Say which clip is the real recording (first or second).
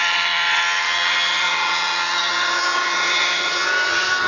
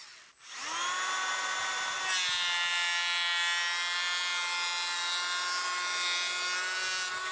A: second